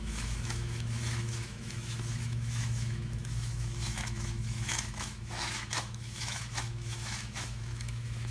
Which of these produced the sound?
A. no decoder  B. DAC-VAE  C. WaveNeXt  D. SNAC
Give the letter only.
B